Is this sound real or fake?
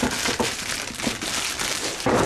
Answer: real